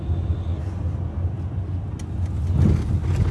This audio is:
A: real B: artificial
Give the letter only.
A